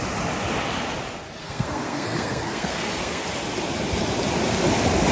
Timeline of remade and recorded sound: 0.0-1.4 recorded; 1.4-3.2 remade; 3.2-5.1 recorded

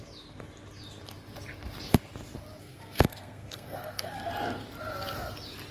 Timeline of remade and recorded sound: 0.0-2.6 recorded; 2.6-4.3 remade; 4.3-5.7 recorded

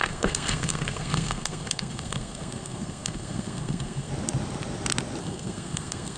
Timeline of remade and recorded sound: 0.0-4.1 remade; 4.1-5.2 recorded; 5.2-6.2 remade

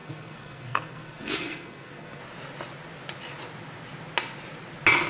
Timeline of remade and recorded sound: 0.0-2.2 remade; 2.2-5.1 recorded

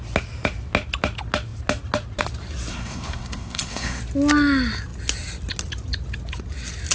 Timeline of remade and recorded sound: 0.0-2.7 recorded; 2.7-4.0 remade; 4.0-6.9 recorded

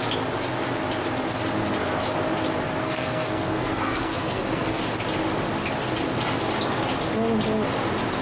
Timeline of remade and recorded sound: 0.0-2.8 recorded; 2.8-4.8 remade; 4.8-8.2 recorded

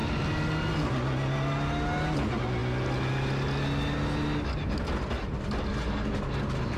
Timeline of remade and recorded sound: 0.0-6.8 recorded

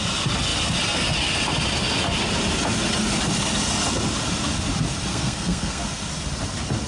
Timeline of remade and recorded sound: 0.0-5.1 recorded; 5.1-5.8 remade; 5.8-6.9 recorded